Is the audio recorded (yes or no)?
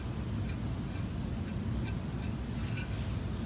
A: yes